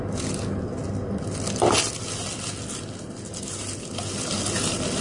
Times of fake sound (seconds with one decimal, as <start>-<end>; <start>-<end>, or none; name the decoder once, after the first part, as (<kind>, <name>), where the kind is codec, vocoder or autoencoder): none

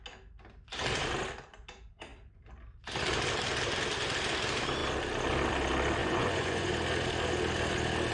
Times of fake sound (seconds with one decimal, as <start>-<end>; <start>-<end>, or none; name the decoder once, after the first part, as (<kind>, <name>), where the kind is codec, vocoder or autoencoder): 6.0-6.7 (vocoder, Vocos)

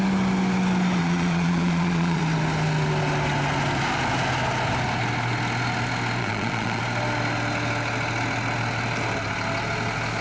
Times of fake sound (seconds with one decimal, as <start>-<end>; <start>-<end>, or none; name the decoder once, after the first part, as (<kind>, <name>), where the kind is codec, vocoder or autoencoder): 1.0-2.2 (vocoder, Vocos); 6.2-6.8

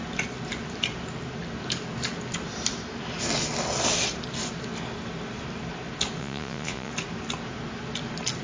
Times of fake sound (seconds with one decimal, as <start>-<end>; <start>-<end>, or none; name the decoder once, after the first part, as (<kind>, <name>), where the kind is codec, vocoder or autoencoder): 6.2-6.9 (vocoder, Vocos)